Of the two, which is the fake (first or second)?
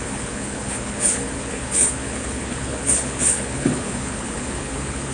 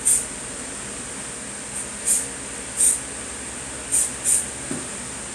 first